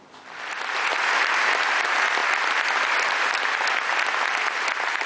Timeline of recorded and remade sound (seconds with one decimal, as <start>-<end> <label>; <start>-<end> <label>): 0.0-5.1 recorded